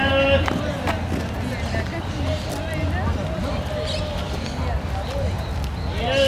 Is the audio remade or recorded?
recorded